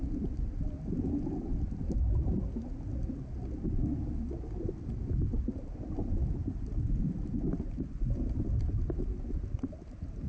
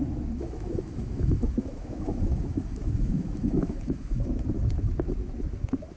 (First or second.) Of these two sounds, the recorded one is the first